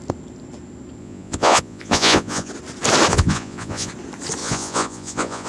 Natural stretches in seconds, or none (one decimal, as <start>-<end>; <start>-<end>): 0.0-1.0; 2.5-3.1; 3.9-4.4